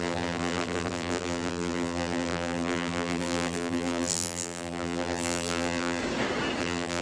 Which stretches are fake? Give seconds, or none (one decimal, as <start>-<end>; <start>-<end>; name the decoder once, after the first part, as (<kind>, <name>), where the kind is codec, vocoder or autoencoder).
0.0-6.0 (vocoder, BigVGAN v2); 6.6-7.0